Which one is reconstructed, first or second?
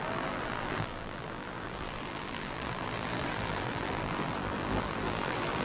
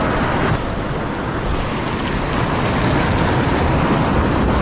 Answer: first